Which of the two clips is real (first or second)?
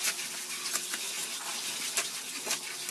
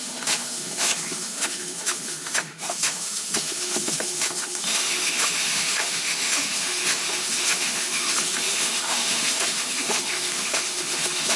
first